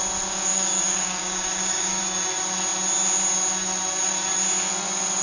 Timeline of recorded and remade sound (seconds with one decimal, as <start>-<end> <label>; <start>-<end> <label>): 0.0-0.5 recorded; 0.5-2.0 remade; 2.0-5.2 recorded